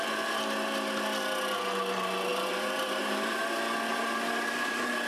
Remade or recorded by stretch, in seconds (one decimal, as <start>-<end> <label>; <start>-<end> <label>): 0.0-2.3 recorded; 2.3-3.4 remade; 3.4-3.9 recorded; 3.9-5.1 remade